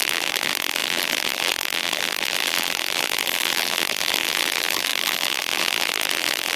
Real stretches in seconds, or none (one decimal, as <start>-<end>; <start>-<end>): none

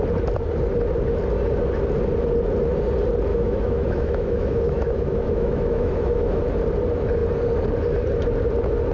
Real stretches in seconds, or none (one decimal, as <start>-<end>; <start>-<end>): 0.0-3.3; 6.4-8.9

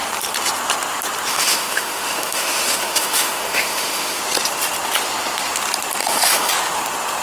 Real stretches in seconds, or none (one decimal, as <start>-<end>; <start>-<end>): 0.0-1.3; 4.2-6.0; 6.5-7.2

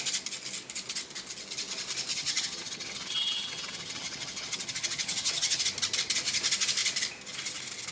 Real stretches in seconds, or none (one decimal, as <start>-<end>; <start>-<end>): 0.0-2.1; 5.6-7.9

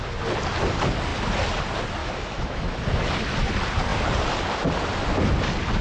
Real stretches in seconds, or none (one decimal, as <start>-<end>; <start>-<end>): 0.0-2.0; 2.8-5.8